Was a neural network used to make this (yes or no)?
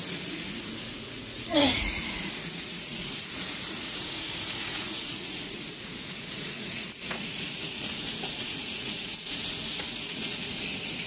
yes